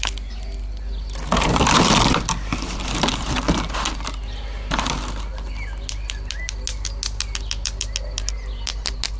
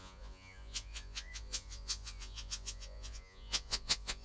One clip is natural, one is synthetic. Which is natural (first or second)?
first